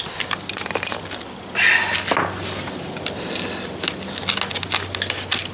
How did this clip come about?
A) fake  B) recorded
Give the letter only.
B